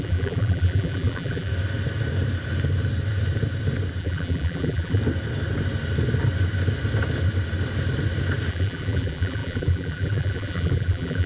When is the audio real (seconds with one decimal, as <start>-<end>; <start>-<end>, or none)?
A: 1.5-4.0; 5.0-8.5